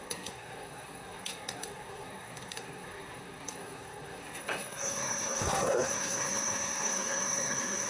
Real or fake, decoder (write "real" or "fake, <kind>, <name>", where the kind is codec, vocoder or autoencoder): fake, codec, SNAC